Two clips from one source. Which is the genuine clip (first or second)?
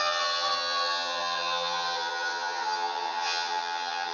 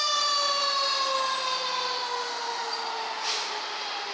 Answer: second